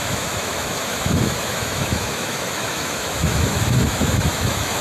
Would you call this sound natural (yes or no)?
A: no